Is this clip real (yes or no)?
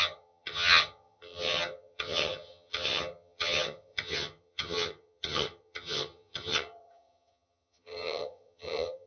no